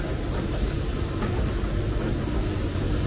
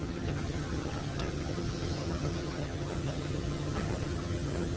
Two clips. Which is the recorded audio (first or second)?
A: first